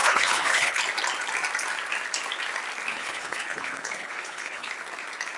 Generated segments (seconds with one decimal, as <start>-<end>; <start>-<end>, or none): 0.0-0.8; 2.9-4.7